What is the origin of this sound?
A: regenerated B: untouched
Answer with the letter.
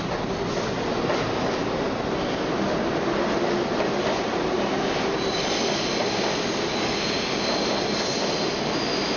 B